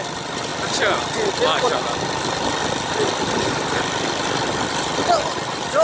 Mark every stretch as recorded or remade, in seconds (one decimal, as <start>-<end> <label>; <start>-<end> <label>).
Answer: 0.0-5.8 recorded